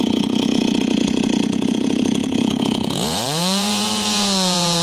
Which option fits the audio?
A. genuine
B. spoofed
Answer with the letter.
B